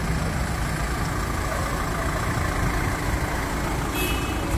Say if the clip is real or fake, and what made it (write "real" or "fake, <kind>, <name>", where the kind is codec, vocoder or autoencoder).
real